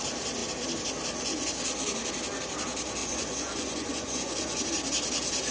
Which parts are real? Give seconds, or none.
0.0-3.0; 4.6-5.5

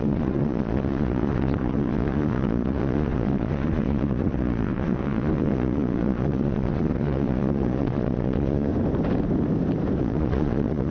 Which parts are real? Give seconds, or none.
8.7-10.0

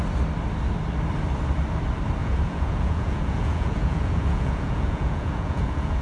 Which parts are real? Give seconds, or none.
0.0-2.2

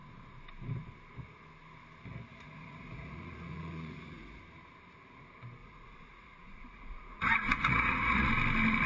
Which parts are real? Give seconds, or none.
0.0-2.3; 4.4-5.6; 8.3-8.9